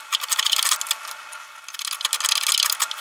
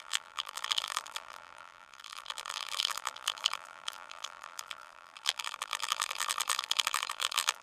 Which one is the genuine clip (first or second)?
first